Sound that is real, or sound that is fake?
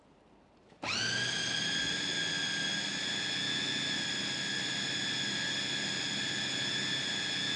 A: real